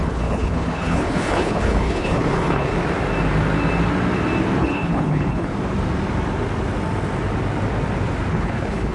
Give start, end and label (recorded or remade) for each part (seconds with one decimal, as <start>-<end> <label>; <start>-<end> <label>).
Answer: 0.0-2.7 remade; 2.7-4.6 recorded; 4.6-5.5 remade; 5.5-8.3 recorded; 8.3-8.9 remade